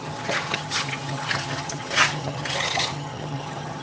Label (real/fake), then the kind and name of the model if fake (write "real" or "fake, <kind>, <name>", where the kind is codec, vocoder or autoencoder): fake, vocoder, HiFi-GAN